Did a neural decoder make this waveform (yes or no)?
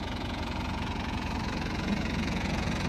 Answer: yes